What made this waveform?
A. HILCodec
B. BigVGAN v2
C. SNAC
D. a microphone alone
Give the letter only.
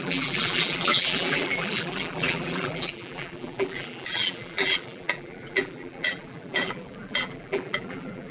B